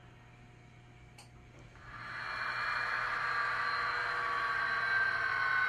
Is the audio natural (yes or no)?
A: yes